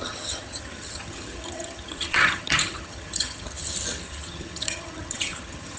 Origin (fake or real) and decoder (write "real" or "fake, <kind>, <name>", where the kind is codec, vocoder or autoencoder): fake, vocoder, HiFi-GAN